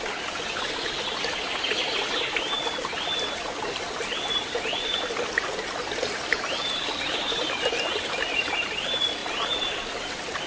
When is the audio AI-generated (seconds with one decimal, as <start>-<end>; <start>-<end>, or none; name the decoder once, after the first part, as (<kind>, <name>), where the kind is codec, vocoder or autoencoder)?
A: none